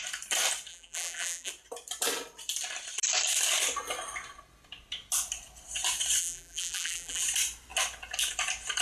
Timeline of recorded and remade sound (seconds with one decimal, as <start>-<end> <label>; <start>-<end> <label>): 0.0-0.7 recorded; 0.7-1.5 remade; 1.5-6.2 recorded; 6.2-7.2 remade; 7.2-8.8 recorded